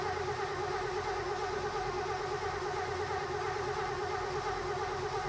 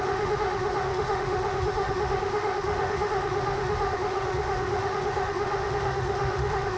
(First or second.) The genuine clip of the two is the first